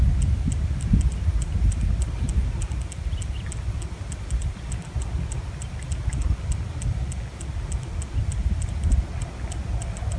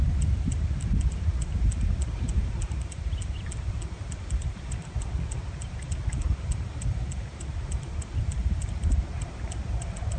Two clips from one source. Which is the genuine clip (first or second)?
first